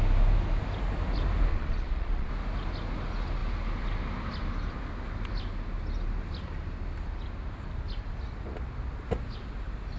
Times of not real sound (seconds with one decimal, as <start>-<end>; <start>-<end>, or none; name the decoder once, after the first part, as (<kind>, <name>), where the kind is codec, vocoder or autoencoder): 1.5-2.3 (vocoder, Vocos)